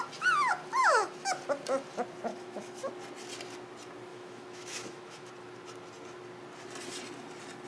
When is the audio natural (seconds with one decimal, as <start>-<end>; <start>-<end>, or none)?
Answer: 0.0-0.8; 1.4-2.3; 2.9-4.1; 5.3-7.7